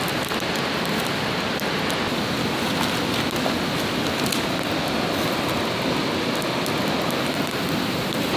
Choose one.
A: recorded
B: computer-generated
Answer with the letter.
A